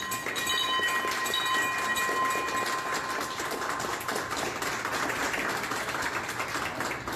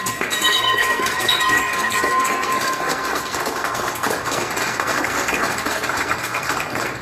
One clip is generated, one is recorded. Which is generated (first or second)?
second